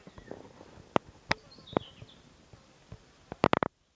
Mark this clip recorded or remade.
recorded